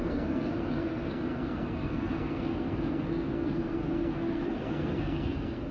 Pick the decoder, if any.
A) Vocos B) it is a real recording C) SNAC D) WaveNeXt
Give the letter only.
C